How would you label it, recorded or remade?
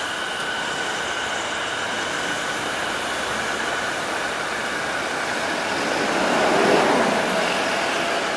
recorded